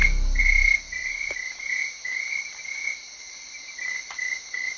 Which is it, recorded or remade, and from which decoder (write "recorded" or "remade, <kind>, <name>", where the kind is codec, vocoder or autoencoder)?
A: recorded